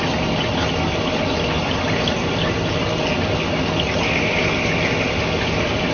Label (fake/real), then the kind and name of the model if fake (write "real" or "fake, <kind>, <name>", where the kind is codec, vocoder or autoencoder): real